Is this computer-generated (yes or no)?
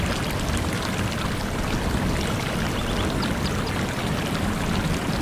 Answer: no